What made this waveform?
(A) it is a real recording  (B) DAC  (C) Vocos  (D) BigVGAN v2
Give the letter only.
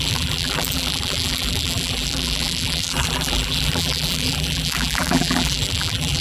D